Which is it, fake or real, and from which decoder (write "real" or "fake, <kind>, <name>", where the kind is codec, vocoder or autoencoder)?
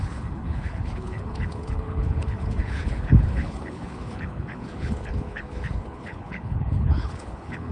fake, codec, HILCodec